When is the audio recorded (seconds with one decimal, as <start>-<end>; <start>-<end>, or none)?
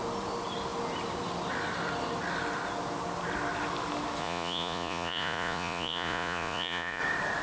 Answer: 0.0-4.2; 7.0-7.4